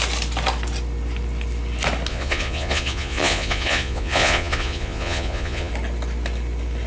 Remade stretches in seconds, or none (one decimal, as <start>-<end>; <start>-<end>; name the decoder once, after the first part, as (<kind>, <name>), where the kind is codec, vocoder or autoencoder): 2.1-5.7 (vocoder, Vocos)